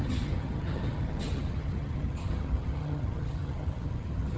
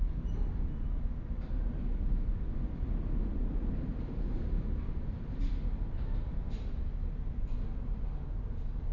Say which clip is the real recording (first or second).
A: second